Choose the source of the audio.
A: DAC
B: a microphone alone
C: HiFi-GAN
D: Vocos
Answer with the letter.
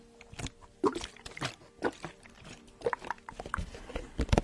B